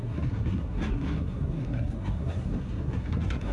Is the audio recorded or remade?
remade